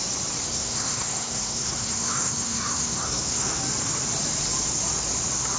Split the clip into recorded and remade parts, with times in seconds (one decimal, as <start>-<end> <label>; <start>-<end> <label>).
0.0-0.4 recorded; 0.4-3.6 remade; 3.6-5.6 recorded